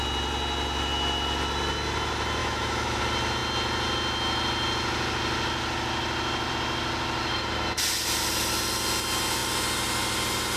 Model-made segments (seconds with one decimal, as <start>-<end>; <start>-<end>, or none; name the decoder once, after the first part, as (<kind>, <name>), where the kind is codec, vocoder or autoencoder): 2.4-3.0 (autoencoder, DAC-VAE)